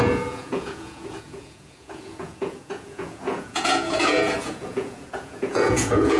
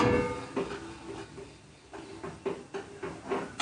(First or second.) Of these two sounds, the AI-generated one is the first